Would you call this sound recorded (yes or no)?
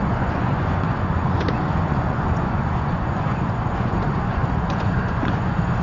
no